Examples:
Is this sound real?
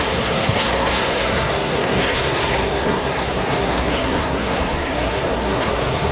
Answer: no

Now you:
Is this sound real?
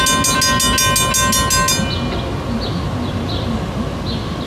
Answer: yes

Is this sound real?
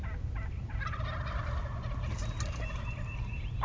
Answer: yes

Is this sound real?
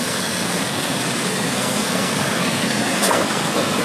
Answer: no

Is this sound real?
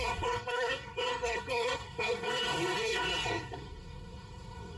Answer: no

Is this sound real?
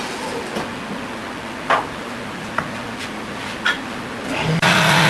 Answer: yes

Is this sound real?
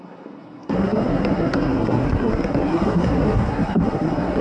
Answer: no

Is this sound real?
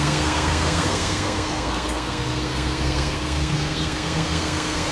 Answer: no